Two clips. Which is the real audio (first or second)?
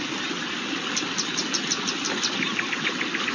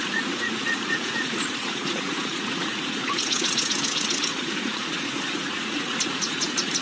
first